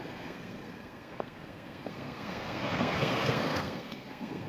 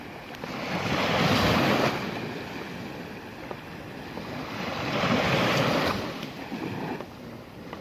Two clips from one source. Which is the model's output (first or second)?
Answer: first